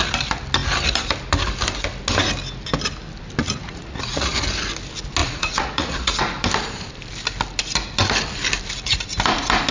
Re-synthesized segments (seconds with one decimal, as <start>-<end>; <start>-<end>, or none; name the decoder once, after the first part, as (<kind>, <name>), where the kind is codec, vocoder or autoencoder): 3.4-4.3 (vocoder, Vocos); 5.2-6.2